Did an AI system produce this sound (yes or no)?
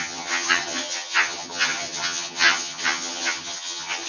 yes